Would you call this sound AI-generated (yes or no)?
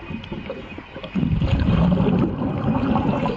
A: no